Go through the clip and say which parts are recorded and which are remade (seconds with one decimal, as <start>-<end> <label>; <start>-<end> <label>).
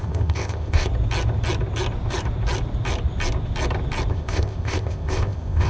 0.0-0.9 remade; 0.9-4.1 recorded; 4.1-5.7 remade